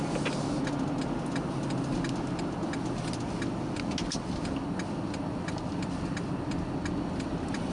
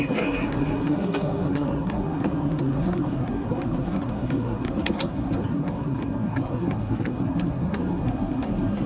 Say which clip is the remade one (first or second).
second